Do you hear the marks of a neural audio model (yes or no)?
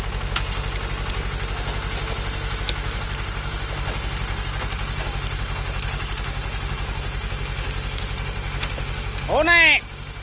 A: no